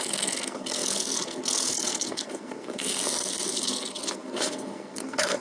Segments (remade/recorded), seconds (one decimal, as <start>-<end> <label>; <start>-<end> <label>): 0.0-5.4 remade